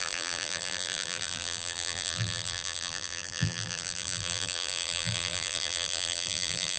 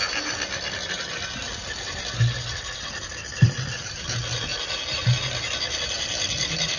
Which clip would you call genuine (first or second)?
second